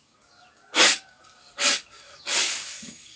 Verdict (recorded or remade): remade